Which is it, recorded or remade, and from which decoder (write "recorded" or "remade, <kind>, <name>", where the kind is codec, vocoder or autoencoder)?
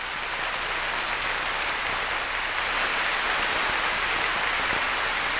remade, vocoder, BigVGAN v2